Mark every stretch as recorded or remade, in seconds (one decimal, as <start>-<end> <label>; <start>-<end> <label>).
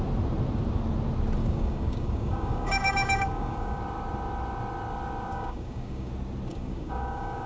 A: 0.0-1.4 recorded; 1.4-3.8 remade; 3.8-5.3 recorded; 5.3-6.1 remade; 6.1-6.5 recorded; 6.5-7.5 remade